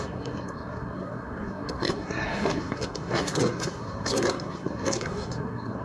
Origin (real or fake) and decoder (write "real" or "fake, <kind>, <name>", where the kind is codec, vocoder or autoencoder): fake, codec, SNAC